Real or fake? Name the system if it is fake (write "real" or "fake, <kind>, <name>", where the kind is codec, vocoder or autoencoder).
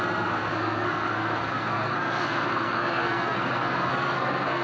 fake, codec, SNAC